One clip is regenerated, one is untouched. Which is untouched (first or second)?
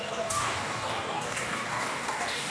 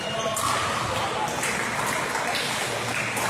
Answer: second